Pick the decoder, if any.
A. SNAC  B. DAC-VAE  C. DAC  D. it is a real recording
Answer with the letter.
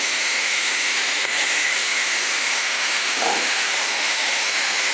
B